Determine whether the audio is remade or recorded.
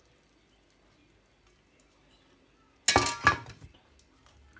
recorded